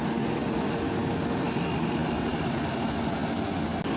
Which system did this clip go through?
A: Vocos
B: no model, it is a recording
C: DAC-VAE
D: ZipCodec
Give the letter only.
B